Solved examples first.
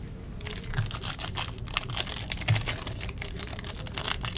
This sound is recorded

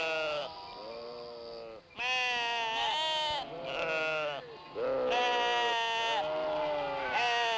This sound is recorded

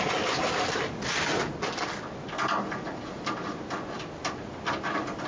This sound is recorded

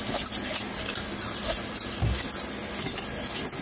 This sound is recorded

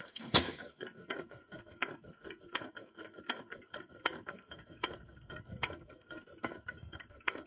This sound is remade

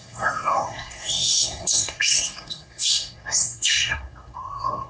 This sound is remade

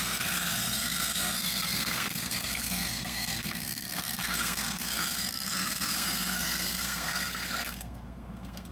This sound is remade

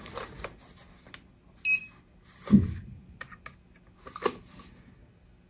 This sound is recorded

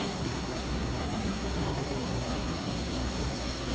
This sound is remade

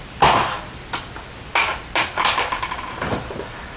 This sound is recorded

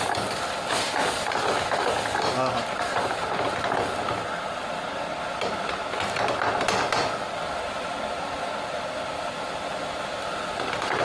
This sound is recorded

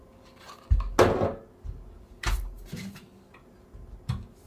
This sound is recorded